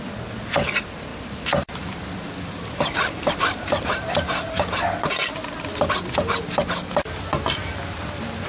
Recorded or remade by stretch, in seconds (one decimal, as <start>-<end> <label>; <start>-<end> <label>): 0.0-1.1 recorded; 1.1-5.9 remade; 5.9-8.5 recorded